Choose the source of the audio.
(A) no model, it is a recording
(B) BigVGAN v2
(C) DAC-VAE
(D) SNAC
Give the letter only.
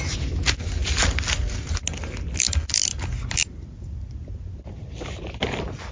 A